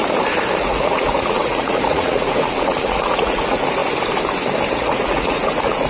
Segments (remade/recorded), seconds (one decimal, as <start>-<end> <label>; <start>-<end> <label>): 0.0-0.6 recorded; 0.6-3.8 remade; 3.8-4.7 recorded; 4.7-5.9 remade